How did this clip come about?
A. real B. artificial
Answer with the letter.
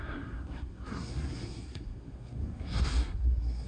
B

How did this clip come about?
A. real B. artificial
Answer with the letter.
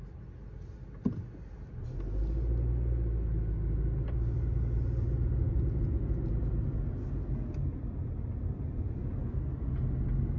A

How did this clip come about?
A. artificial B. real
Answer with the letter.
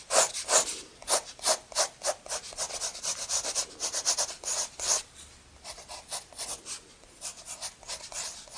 B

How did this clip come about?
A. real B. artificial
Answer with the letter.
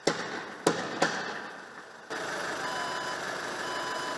A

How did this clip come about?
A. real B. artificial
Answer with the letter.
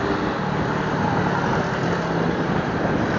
A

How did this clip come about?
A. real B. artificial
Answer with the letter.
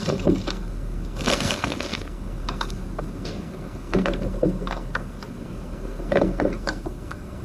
B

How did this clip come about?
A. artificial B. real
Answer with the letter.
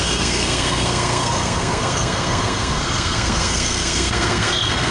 A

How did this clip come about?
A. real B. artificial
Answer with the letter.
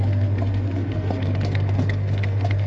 B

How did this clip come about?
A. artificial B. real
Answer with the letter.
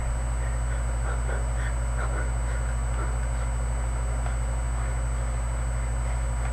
B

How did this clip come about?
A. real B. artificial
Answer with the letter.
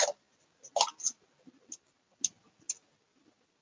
A